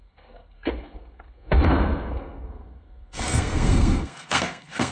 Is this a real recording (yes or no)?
no